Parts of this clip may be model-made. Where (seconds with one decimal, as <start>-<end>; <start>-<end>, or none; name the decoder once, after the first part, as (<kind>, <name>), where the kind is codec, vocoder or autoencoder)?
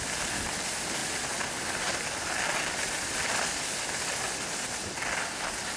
none